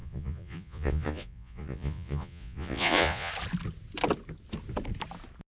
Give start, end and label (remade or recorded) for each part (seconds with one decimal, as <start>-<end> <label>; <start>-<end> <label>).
0.0-3.3 remade; 3.3-5.5 recorded